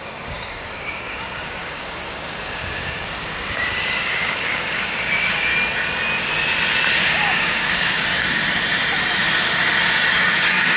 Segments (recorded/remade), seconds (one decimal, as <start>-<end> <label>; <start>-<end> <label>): 0.0-5.5 remade; 5.5-7.1 recorded; 7.1-8.4 remade; 8.4-10.1 recorded; 10.1-10.8 remade